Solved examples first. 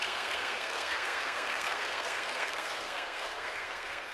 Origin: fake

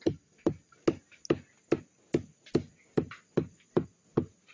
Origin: real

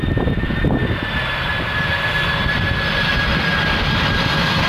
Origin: real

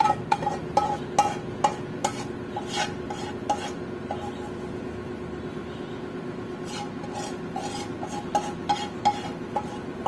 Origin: real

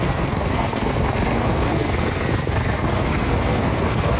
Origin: fake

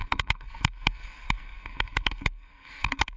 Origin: fake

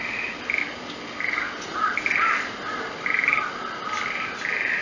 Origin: real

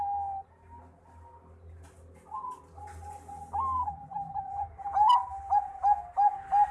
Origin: real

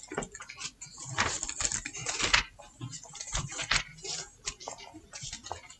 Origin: real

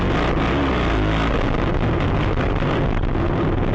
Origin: real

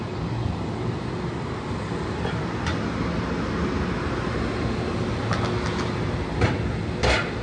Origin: real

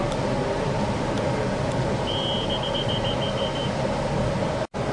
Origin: real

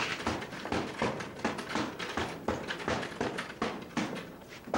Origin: real